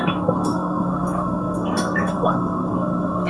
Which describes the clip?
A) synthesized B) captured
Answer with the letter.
A